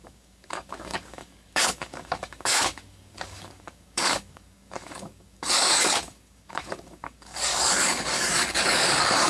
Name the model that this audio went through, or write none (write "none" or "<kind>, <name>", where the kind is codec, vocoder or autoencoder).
codec, DAC